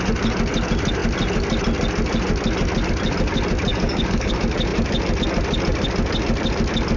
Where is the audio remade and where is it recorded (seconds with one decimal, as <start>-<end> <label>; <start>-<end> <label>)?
0.0-3.7 recorded; 3.7-4.3 remade; 4.3-7.0 recorded